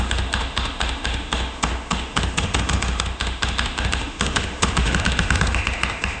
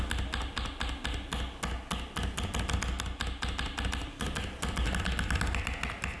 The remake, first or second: first